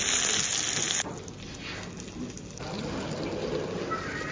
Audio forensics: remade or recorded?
recorded